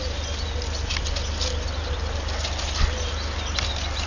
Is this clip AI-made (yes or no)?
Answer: no